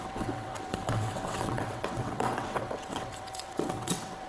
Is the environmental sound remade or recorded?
remade